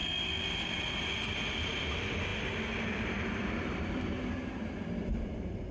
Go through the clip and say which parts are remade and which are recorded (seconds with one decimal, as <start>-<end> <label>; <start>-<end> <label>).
0.0-0.8 remade; 0.8-2.3 recorded; 2.3-4.3 remade; 4.3-5.7 recorded